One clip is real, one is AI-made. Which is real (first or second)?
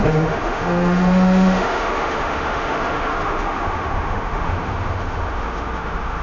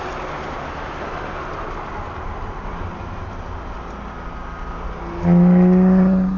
second